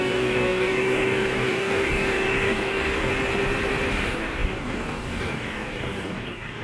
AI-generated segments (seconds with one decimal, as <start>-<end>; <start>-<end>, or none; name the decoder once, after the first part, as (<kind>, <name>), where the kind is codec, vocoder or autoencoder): 0.0-3.1 (codec, DAC); 3.9-6.6